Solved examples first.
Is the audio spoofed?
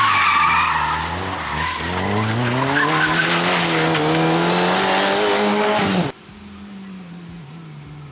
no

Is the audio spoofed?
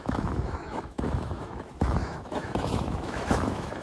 yes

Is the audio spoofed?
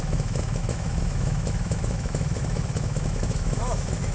yes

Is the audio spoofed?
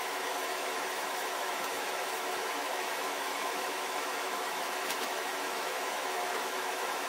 yes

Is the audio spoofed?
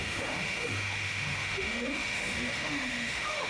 yes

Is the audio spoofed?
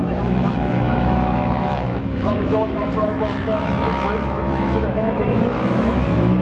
yes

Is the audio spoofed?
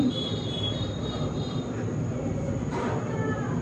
no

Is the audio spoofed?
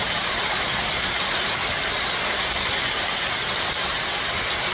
no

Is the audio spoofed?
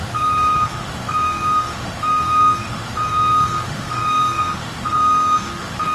yes